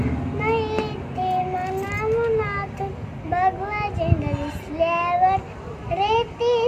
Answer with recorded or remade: recorded